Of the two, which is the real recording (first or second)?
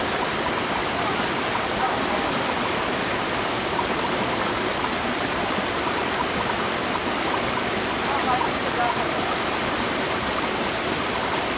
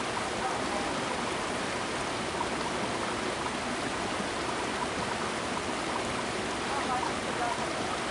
second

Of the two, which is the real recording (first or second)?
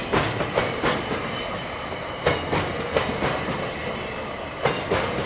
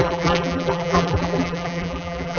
first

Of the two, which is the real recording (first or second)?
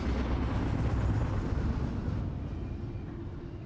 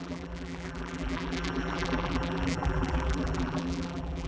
first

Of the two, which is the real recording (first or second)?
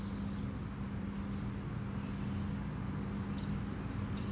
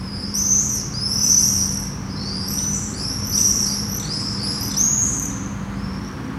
first